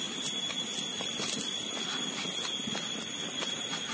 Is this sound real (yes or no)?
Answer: yes